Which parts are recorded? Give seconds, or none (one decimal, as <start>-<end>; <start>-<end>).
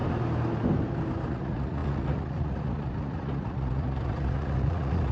0.0-1.3